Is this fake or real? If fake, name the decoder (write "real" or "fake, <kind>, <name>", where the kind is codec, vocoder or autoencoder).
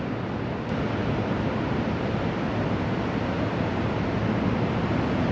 real